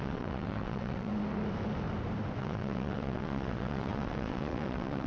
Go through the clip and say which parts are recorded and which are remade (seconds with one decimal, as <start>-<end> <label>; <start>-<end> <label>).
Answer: 0.0-1.1 remade; 1.1-2.4 recorded; 2.4-5.1 remade